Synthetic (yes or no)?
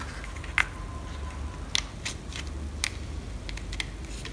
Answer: no